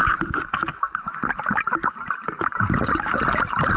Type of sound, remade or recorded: recorded